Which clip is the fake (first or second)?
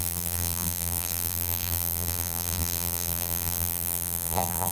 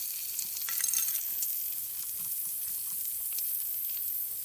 first